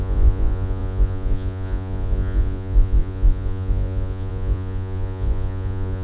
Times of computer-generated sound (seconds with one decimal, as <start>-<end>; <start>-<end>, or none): 0.0-6.0